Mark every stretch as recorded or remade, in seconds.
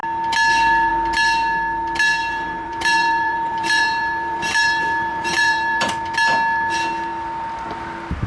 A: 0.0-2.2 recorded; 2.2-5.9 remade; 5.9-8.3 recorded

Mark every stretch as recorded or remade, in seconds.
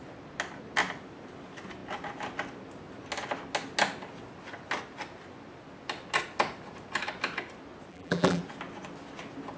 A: 0.0-7.9 recorded; 7.9-8.4 remade; 8.4-9.6 recorded